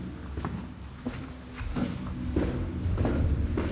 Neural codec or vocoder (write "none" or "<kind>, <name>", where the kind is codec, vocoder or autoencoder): none